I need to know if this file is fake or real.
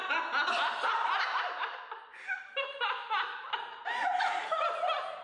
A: real